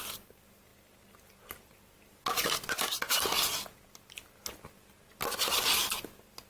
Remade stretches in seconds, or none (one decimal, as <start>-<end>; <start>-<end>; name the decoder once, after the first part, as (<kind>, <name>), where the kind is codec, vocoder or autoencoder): none